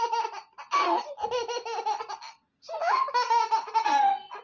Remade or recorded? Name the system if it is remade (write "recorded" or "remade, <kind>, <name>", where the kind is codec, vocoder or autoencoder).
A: recorded